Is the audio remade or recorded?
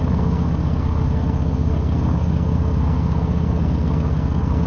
remade